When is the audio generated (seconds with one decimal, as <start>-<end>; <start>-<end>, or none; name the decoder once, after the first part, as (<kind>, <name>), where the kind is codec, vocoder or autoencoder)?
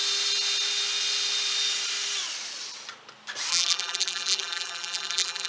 3.5-5.5 (vocoder, BigVGAN v2)